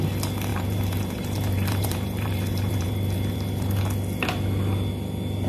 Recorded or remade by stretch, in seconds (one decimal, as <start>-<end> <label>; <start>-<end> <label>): 0.0-0.5 recorded; 0.5-3.8 remade; 3.8-5.5 recorded